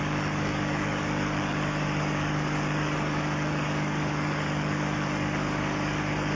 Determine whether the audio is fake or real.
fake